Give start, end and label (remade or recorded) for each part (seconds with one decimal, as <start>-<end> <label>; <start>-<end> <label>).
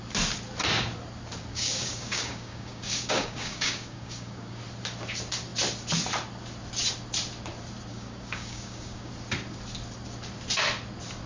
0.0-1.5 recorded; 1.5-4.6 remade; 4.6-7.9 recorded; 7.9-9.1 remade; 9.1-11.3 recorded